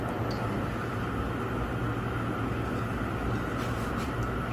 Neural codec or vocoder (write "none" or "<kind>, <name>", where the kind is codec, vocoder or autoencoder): none